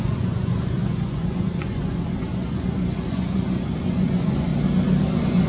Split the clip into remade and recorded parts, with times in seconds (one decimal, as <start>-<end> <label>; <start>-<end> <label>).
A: 0.0-4.5 remade; 4.5-5.0 recorded; 5.0-5.5 remade